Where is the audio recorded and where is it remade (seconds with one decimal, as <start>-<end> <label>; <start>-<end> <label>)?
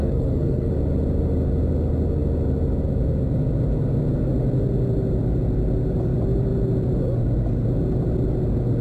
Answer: 0.0-0.7 remade; 0.7-8.8 recorded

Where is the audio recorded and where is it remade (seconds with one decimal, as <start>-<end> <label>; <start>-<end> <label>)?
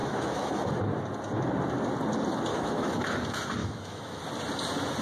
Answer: 0.0-0.8 remade; 0.8-2.5 recorded; 2.5-3.0 remade; 3.0-3.6 recorded; 3.6-4.2 remade; 4.2-5.0 recorded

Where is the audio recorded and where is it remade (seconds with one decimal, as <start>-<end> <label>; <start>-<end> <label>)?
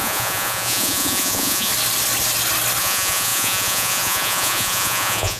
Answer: 0.0-1.7 remade; 1.7-2.8 recorded; 2.8-5.4 remade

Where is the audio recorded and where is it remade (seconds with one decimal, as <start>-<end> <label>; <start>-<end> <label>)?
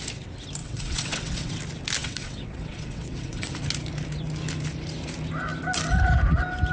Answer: 0.0-0.6 recorded; 0.6-1.5 remade; 1.5-2.0 recorded; 2.0-3.5 remade; 3.5-6.7 recorded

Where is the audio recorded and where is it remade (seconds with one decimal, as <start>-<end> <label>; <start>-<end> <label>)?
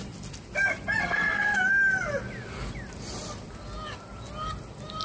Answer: 0.0-1.0 recorded; 1.0-1.6 remade; 1.6-5.0 recorded